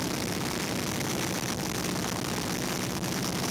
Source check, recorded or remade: recorded